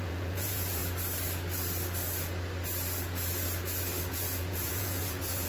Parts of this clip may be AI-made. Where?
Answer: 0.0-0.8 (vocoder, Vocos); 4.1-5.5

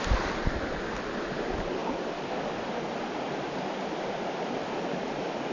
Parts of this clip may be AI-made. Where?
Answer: none

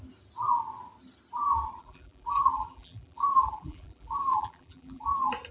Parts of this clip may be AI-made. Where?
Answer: 1.8-5.1 (vocoder, BigVGAN v2)

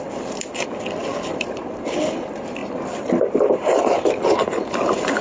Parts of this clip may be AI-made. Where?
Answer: 1.1-1.8 (vocoder, BigVGAN v2); 2.6-3.8

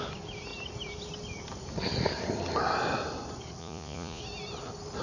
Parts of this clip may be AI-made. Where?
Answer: 3.6-4.2 (vocoder, Vocos)